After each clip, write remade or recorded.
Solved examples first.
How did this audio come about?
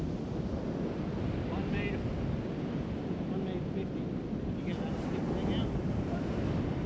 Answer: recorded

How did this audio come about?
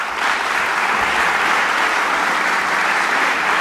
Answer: recorded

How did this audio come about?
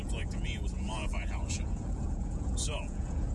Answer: remade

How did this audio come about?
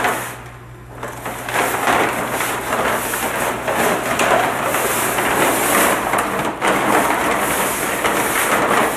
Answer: recorded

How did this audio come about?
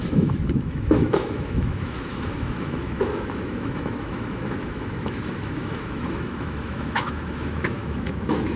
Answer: remade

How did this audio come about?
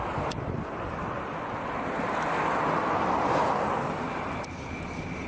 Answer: recorded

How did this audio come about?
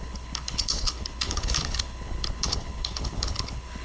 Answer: remade